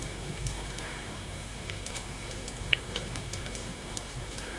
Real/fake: fake